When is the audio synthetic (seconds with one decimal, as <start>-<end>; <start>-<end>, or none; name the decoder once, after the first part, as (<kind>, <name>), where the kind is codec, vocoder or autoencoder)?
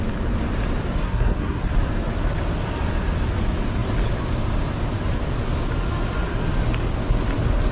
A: 1.0-1.7 (codec, SNAC)